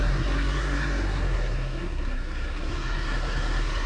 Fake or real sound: fake